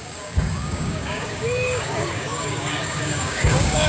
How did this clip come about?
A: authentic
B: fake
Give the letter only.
B